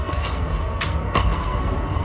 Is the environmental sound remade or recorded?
remade